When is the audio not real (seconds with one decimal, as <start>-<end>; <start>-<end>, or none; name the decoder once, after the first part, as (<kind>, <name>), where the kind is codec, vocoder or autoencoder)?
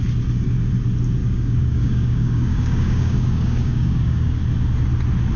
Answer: 1.2-4.4 (codec, DAC)